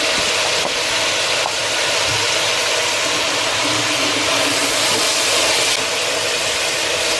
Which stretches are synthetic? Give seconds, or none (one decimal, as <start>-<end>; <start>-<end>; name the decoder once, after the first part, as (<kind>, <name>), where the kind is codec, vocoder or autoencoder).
none